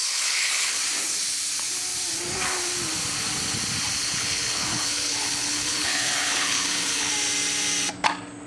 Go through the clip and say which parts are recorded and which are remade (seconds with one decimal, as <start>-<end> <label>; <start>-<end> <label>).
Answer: 0.0-0.8 remade; 0.8-4.0 recorded; 4.0-7.1 remade; 7.1-8.5 recorded